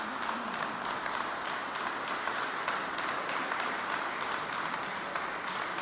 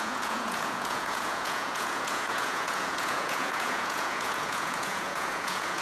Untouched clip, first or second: first